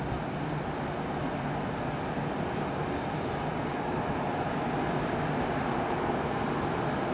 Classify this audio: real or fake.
real